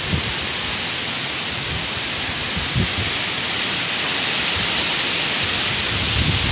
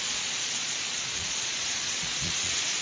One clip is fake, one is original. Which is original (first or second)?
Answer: first